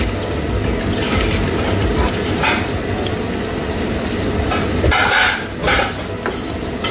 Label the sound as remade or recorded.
recorded